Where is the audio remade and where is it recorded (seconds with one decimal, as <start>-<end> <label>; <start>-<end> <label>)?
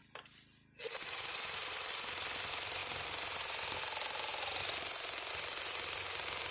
0.0-2.8 recorded; 2.8-3.8 remade; 3.8-4.3 recorded; 4.3-5.3 remade; 5.3-6.5 recorded